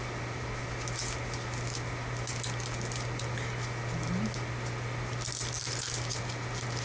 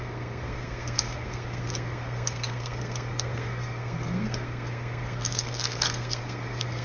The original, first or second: first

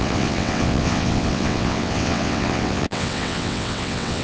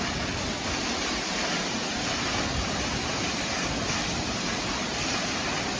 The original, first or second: second